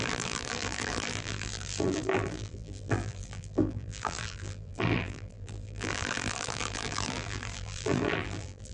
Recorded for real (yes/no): no